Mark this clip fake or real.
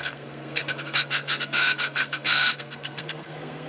fake